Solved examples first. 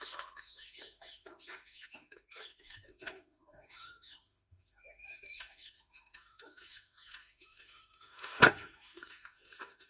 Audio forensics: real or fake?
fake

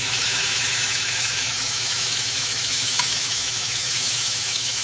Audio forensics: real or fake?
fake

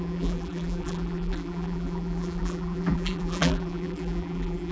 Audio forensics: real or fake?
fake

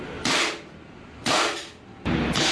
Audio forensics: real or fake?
real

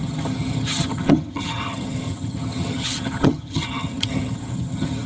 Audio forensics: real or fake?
fake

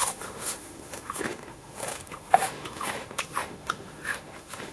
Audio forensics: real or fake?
fake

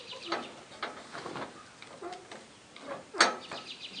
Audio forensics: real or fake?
real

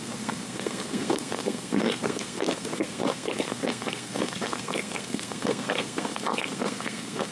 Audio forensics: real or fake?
fake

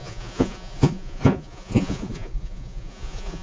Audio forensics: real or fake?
fake